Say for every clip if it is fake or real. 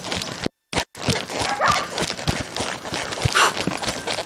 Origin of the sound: real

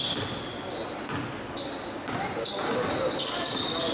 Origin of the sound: real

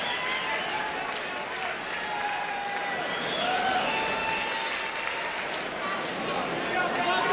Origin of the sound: real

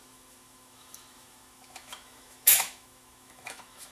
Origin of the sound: fake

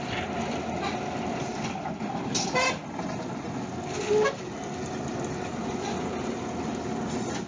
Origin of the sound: real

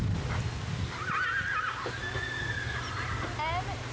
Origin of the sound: real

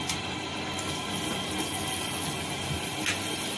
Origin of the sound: real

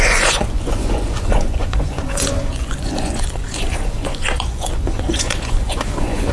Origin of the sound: fake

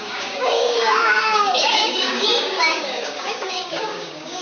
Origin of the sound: fake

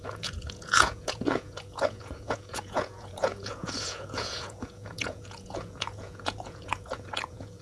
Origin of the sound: fake